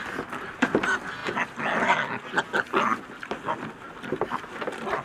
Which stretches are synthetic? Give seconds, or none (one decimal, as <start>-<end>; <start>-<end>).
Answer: none